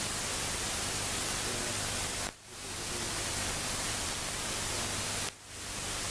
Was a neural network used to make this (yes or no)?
no